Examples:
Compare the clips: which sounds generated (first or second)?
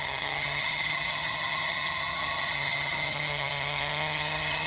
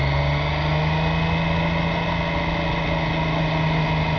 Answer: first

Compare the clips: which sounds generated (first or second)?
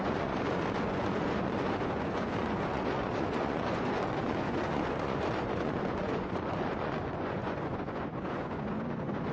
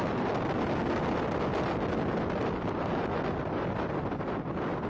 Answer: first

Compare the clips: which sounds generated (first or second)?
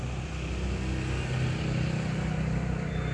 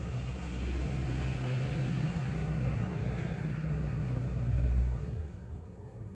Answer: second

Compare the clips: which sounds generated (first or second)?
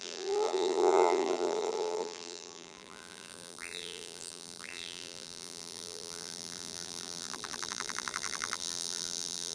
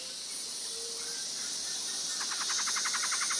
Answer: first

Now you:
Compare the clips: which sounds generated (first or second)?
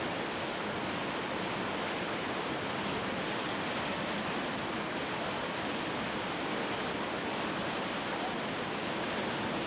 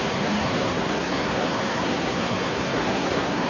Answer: second